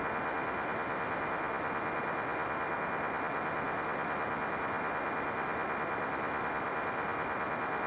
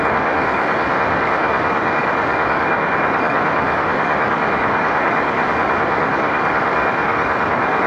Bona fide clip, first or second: first